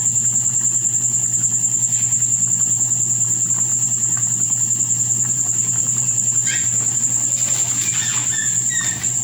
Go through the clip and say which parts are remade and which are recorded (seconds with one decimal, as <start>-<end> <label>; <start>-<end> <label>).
0.0-3.7 recorded; 3.7-7.0 remade; 7.0-8.2 recorded; 8.2-9.2 remade

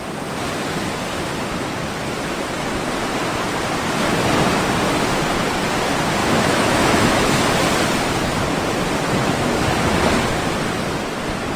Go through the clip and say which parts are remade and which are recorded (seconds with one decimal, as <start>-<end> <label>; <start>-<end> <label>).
0.0-6.2 recorded; 6.2-7.5 remade; 7.5-11.6 recorded

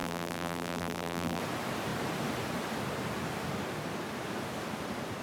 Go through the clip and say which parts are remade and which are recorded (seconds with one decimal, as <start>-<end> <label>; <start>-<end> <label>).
0.0-1.4 remade; 1.4-5.2 recorded

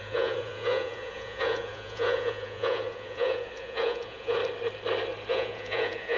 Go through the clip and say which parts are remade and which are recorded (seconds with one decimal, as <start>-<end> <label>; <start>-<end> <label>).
0.0-4.4 remade; 4.4-5.3 recorded; 5.3-6.2 remade

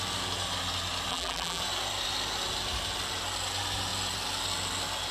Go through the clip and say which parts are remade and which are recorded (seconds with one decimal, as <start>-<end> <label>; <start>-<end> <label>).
0.0-1.1 recorded; 1.1-1.6 remade; 1.6-5.1 recorded

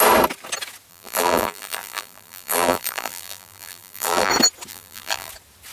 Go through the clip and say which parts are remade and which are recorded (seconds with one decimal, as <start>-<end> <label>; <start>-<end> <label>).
0.0-0.9 recorded; 0.9-4.3 remade; 4.3-4.7 recorded; 4.7-5.3 remade; 5.3-5.7 recorded

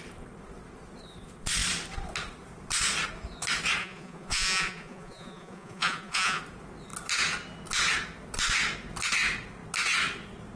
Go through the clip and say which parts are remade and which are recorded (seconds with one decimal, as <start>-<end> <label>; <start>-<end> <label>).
0.0-3.8 recorded; 3.8-6.4 remade; 6.4-10.6 recorded